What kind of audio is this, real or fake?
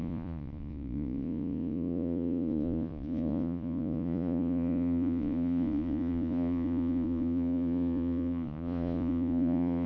fake